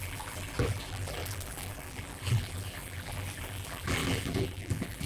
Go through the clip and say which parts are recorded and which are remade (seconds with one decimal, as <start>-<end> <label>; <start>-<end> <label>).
0.0-5.1 remade